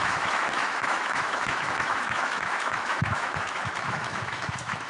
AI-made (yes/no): yes